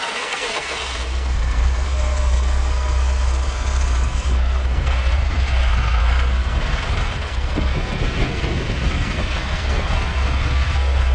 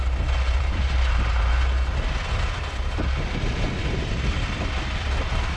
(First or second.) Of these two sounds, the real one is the second